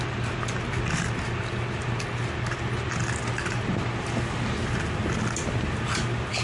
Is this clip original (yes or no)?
yes